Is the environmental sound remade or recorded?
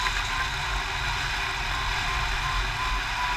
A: recorded